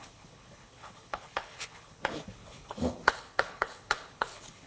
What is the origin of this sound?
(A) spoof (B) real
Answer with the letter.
A